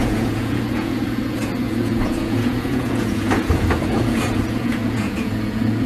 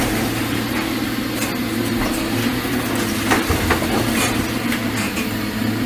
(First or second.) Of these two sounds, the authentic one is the second